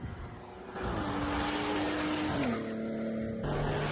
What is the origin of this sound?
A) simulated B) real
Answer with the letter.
B